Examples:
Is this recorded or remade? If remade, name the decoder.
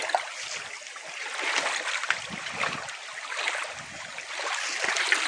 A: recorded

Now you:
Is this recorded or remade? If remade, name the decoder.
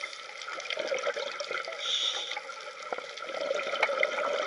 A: recorded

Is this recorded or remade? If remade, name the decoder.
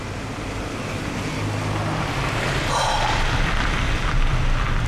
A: recorded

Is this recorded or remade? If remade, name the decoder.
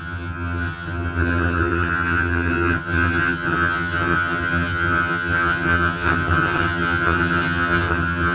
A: remade, vocoder, HiFi-GAN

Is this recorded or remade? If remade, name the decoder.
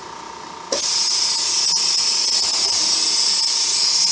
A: recorded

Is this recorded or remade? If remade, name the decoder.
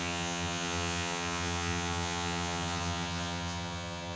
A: remade, vocoder, HiFi-GAN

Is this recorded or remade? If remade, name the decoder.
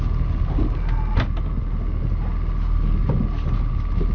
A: recorded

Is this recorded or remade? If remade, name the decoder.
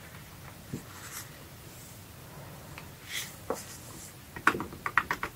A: recorded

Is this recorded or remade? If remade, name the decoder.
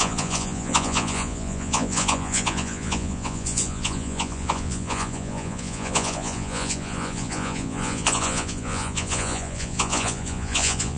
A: remade, vocoder, Vocos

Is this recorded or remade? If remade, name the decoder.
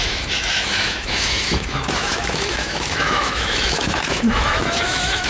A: remade, autoencoder, DAC-VAE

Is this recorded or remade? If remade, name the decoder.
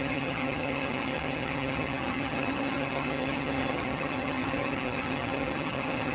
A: remade, vocoder, HiFi-GAN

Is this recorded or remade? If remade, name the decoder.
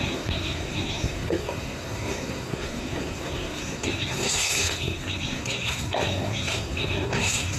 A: remade, codec, SNAC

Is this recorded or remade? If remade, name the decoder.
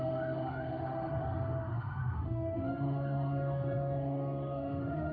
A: remade, autoencoder, DAC-VAE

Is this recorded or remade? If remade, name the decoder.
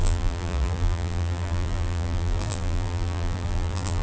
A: remade, vocoder, BigVGAN v2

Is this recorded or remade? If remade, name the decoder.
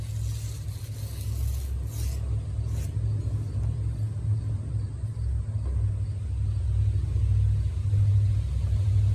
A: recorded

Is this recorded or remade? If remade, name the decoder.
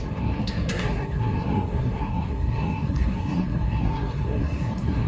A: remade, codec, SNAC